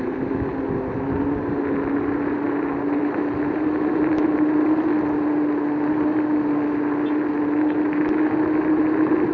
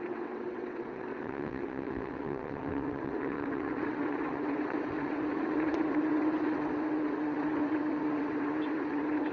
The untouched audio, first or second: first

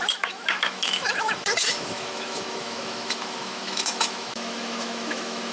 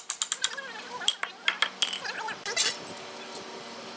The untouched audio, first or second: second